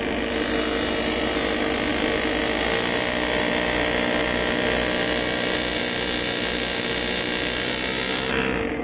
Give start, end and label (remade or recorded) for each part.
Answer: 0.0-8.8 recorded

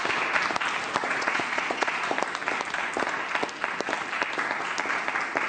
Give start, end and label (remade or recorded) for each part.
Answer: 0.0-1.0 recorded; 1.0-2.0 remade; 2.0-5.5 recorded

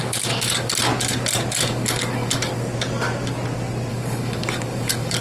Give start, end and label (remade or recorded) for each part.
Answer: 0.0-0.9 remade; 0.9-1.5 recorded; 1.5-2.5 remade; 2.5-3.9 recorded; 3.9-5.2 remade

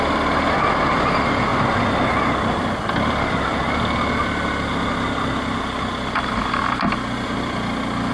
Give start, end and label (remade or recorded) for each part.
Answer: 0.0-8.1 recorded

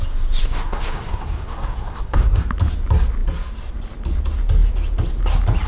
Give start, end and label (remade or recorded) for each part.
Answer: 0.0-0.4 recorded; 0.4-2.4 remade; 2.4-5.7 recorded

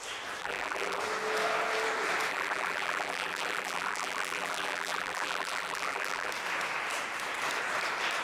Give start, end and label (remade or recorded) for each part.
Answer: 0.0-0.4 recorded; 0.4-1.0 remade; 1.0-2.3 recorded; 2.3-6.3 remade; 6.3-8.2 recorded

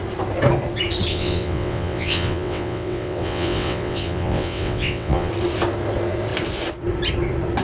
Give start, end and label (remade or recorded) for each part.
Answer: 0.0-1.1 recorded; 1.1-5.3 remade; 5.3-7.6 recorded

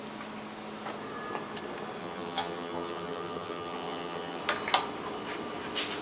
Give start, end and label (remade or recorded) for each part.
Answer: 0.0-2.0 recorded; 2.0-4.4 remade; 4.4-6.0 recorded